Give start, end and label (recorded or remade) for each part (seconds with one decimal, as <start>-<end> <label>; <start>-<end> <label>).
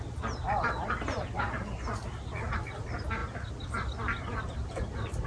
0.0-5.3 recorded